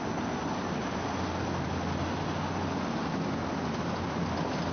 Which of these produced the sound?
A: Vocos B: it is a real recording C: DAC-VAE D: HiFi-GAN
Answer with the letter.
B